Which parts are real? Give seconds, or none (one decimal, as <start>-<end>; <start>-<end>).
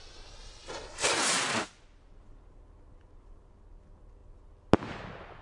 0.0-5.4